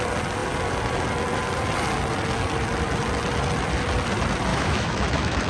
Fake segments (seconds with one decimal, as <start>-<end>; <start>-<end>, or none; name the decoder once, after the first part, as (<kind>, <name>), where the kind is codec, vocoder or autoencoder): 4.5-5.5 (autoencoder, DAC-VAE)